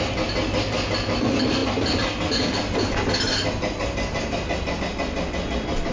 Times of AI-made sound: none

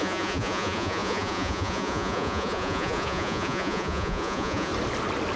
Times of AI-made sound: 0.0-4.7 (vocoder, Vocos)

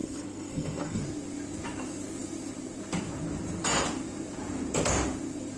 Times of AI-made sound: 0.0-1.0 (codec, SNAC)